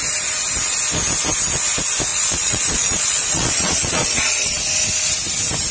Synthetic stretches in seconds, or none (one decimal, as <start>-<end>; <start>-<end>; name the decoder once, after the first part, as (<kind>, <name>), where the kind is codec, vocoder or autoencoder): 2.1-4.6 (vocoder, Vocos)

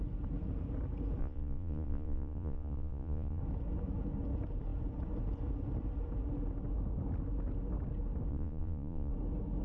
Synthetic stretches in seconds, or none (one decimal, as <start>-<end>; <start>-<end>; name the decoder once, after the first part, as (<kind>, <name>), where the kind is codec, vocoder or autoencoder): 1.2-3.4 (vocoder, Vocos); 8.3-9.1